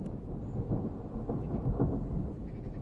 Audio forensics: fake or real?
real